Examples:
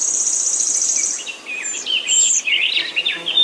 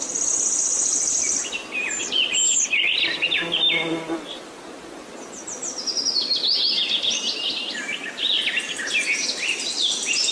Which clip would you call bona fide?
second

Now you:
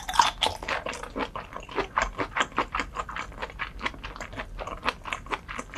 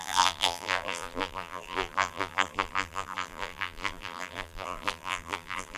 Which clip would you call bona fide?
first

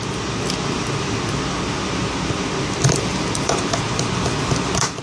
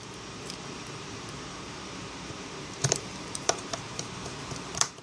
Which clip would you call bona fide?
first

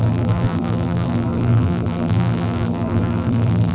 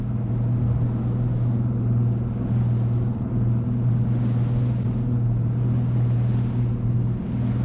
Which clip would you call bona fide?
second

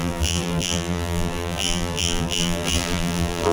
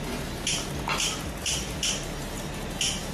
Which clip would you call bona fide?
second